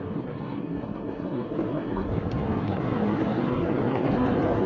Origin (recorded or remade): remade